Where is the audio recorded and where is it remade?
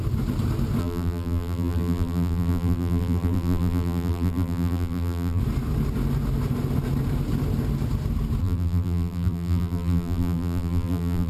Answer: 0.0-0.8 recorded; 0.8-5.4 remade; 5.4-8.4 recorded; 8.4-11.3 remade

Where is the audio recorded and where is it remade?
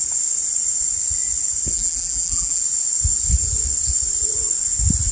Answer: 0.0-1.7 recorded; 1.7-2.6 remade; 2.6-5.1 recorded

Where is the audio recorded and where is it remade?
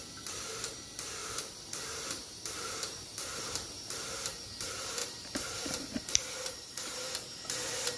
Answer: 0.0-1.2 recorded; 1.2-4.0 remade; 4.0-5.0 recorded; 5.0-6.7 remade; 6.7-8.0 recorded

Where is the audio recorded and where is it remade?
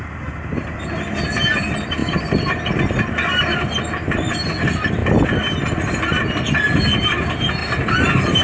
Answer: 0.0-7.6 recorded; 7.6-8.4 remade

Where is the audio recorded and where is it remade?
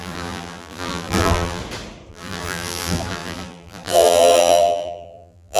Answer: 0.0-1.6 remade; 1.6-2.1 recorded; 2.1-5.6 remade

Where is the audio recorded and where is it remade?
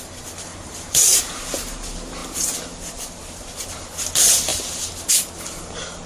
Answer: 0.0-0.5 recorded; 0.5-1.2 remade; 1.2-6.1 recorded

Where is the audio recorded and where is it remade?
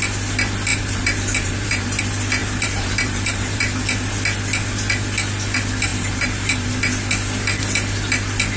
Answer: 0.0-0.7 recorded; 0.7-2.0 remade; 2.0-2.4 recorded; 2.4-3.6 remade; 3.6-5.9 recorded; 5.9-6.7 remade; 6.7-8.6 recorded